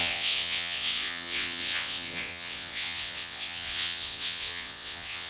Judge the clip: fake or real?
fake